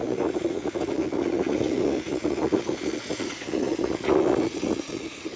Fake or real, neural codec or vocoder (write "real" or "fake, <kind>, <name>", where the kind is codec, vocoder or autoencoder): fake, vocoder, Vocos